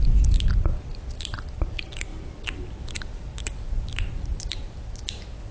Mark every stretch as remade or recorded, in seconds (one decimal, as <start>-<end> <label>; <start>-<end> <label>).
0.0-5.5 remade